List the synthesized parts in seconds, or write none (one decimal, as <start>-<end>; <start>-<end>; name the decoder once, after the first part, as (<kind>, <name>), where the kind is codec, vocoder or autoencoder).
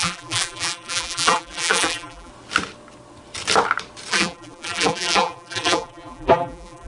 0.0-2.3 (vocoder, BigVGAN v2); 4.1-6.9